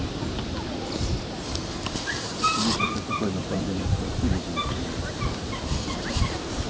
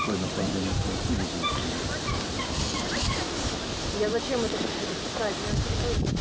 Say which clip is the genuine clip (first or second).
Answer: second